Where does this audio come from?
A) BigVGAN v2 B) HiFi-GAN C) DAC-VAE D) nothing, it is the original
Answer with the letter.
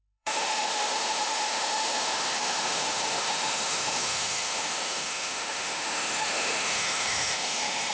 C